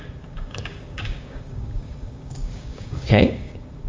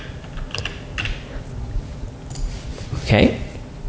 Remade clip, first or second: first